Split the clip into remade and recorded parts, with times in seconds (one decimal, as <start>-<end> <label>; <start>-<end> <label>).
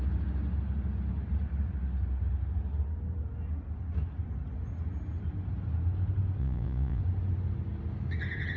0.0-6.4 recorded; 6.4-7.0 remade; 7.0-8.6 recorded